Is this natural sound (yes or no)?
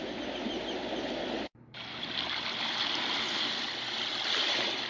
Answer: yes